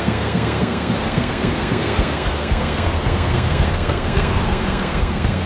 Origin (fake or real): fake